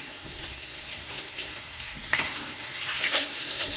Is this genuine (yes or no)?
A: no